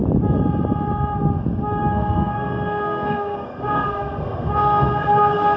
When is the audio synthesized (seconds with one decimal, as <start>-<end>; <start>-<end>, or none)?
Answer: 1.8-5.6